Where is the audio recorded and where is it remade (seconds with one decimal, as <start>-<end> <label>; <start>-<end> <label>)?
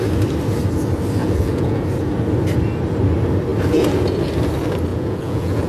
0.0-1.2 recorded; 1.2-1.8 remade; 1.8-4.9 recorded; 4.9-5.7 remade